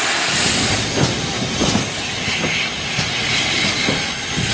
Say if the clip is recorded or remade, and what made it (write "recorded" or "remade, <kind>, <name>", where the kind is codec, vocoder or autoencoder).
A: recorded